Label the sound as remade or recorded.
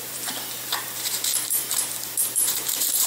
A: remade